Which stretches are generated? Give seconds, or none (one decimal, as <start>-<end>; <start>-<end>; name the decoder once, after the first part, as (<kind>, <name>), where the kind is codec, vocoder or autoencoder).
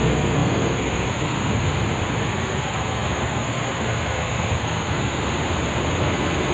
0.0-1.7 (codec, SNAC); 2.2-5.2; 6.0-6.5